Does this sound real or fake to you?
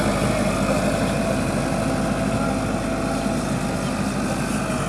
real